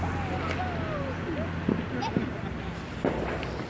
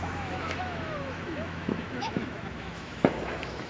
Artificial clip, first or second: second